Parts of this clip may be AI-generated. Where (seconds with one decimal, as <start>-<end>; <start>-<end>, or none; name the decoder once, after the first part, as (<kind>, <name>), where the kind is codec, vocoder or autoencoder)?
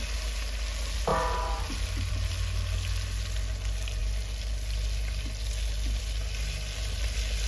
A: none